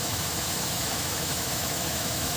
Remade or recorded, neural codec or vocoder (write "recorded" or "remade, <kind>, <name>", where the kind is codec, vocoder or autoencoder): remade, autoencoder, DAC-VAE